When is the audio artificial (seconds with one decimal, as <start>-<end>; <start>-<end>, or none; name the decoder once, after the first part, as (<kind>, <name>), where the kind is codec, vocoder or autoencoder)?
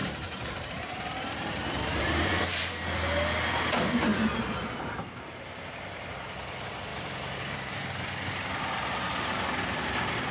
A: 0.0-2.7 (vocoder, BigVGAN v2); 6.9-8.1